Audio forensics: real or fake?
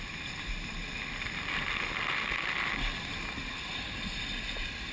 real